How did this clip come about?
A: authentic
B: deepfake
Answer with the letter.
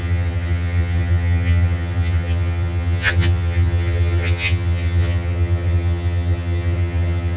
B